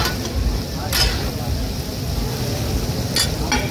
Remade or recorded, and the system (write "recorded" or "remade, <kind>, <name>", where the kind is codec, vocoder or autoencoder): recorded